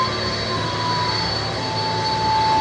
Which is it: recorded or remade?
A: recorded